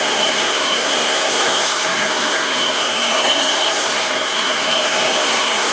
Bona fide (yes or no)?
no